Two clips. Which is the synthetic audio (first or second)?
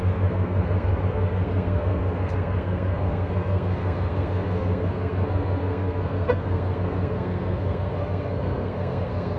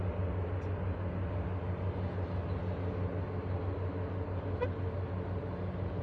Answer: first